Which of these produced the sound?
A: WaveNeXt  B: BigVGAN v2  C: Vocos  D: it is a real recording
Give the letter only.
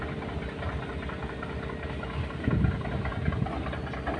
D